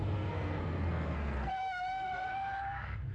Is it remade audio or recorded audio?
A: remade